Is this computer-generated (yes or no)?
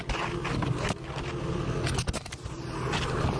no